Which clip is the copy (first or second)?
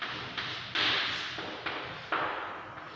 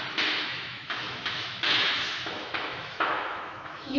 second